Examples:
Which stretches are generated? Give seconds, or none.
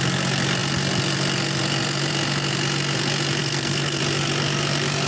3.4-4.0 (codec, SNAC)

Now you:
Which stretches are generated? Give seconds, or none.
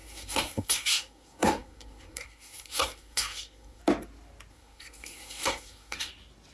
0.0-3.8 (codec, SNAC); 4.5-6.1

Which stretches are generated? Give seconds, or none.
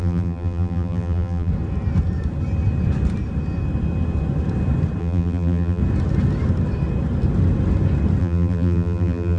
0.0-1.5 (vocoder, BigVGAN v2); 5.0-5.8; 8.2-9.4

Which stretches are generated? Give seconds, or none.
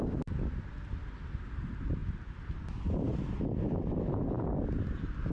none